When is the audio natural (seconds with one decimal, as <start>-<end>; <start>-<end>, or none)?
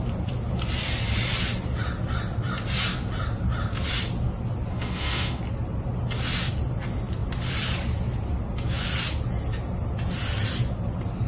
0.0-4.7; 5.4-11.3